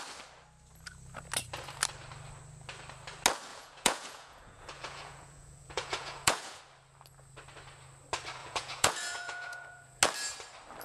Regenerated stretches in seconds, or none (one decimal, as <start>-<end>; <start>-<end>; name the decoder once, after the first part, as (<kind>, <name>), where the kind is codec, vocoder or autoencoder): 3.5-6.6 (vocoder, Vocos); 8.4-10.0